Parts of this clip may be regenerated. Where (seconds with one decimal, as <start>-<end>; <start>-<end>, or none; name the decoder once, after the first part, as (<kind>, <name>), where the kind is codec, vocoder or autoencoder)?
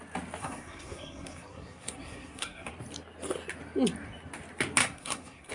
0.4-2.7 (codec, SNAC); 4.8-5.5